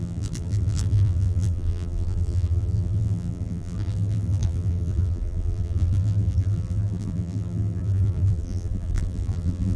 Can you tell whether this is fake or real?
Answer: fake